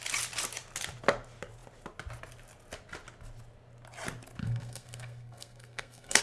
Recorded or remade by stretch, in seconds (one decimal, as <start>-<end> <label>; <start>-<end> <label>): 0.0-4.4 recorded; 4.4-6.2 remade

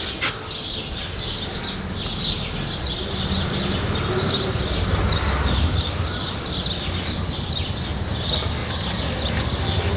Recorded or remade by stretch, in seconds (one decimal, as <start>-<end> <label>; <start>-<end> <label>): 0.0-10.0 recorded

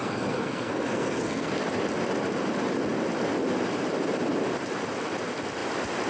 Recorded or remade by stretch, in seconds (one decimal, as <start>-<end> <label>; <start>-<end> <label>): 0.0-1.5 remade; 1.5-6.1 recorded

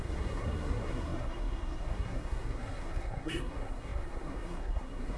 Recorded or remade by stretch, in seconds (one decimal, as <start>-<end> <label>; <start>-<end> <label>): 0.0-5.2 remade

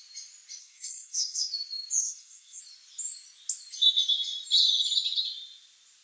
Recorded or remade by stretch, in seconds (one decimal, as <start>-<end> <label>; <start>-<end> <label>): 0.0-0.6 recorded; 0.6-1.5 remade; 1.5-2.0 recorded; 2.0-2.6 remade; 2.6-6.0 recorded

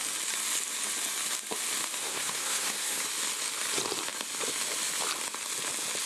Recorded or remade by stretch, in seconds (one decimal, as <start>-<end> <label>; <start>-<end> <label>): 0.0-2.0 recorded; 2.0-3.0 remade; 3.0-6.1 recorded